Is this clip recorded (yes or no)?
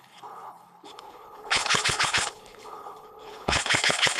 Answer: no